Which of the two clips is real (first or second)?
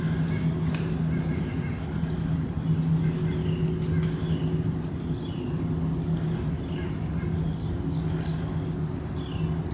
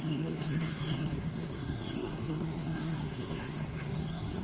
first